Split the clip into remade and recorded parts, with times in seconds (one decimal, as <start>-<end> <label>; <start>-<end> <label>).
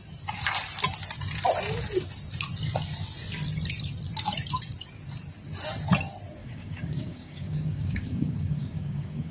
0.0-6.4 recorded; 6.4-9.3 remade